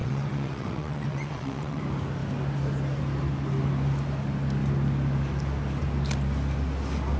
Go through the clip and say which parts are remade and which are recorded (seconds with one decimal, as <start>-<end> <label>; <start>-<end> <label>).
0.0-1.8 remade; 1.8-7.2 recorded